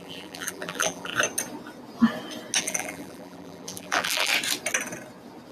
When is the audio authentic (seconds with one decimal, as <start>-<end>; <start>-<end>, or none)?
1.1-2.6; 4.3-5.5